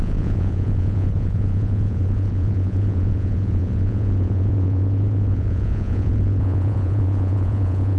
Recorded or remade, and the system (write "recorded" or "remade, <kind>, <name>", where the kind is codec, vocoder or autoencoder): remade, vocoder, Vocos